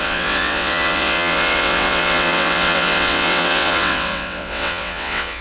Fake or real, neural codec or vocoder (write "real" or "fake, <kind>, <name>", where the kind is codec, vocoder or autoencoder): fake, vocoder, WaveNeXt